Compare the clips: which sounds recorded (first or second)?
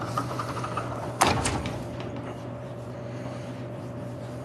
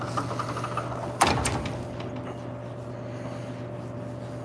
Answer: second